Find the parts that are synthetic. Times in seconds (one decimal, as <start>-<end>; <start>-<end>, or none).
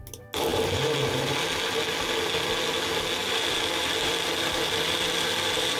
3.2-5.8